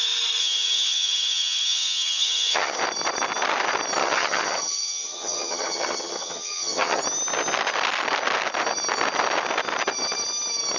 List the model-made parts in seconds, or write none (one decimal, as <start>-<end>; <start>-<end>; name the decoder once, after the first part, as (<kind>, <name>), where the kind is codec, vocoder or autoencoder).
0.4-2.8 (vocoder, HiFi-GAN); 4.0-7.0